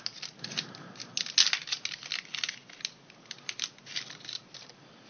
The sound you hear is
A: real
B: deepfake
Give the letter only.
A